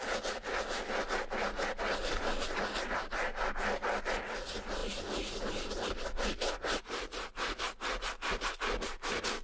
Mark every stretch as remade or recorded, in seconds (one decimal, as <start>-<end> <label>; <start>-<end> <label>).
0.0-9.4 recorded